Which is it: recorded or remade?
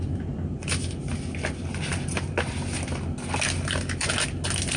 recorded